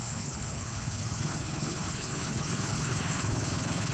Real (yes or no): no